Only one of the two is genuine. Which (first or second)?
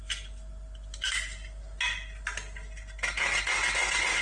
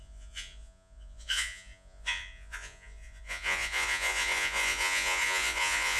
first